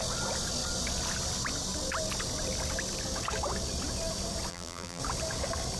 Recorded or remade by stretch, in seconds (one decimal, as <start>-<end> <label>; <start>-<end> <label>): 0.0-4.5 recorded; 4.5-5.0 remade; 5.0-5.8 recorded